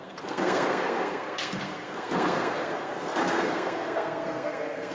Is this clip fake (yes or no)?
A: yes